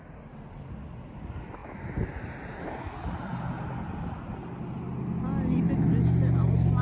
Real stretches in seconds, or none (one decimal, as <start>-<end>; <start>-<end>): 0.0-6.8